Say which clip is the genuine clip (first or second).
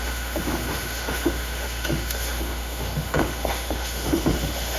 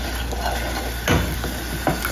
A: second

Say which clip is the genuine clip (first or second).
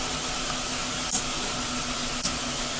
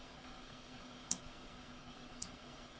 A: first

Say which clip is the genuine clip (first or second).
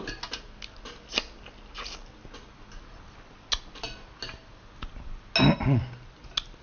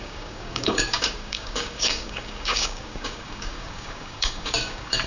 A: first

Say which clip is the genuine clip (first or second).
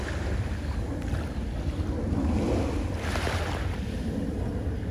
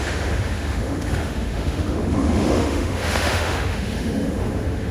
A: first